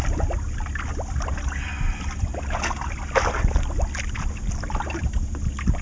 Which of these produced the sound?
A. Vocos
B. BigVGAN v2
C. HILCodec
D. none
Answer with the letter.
D